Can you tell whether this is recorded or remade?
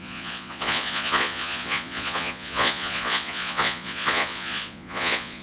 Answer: remade